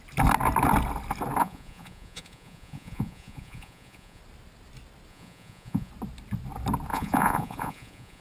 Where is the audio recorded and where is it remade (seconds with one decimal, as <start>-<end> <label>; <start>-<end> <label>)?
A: 0.0-1.4 recorded; 1.4-4.2 remade; 4.2-5.1 recorded; 5.1-5.9 remade; 5.9-6.9 recorded; 6.9-8.2 remade